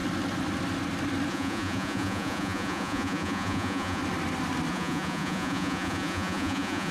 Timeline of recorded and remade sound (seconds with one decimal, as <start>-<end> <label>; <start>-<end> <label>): 0.0-1.3 recorded; 1.3-4.0 remade; 4.0-4.7 recorded; 4.7-6.9 remade